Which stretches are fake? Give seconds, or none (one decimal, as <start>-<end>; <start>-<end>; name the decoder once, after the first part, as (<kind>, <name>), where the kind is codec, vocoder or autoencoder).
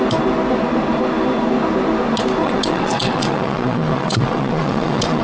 2.4-5.2 (vocoder, WaveNeXt)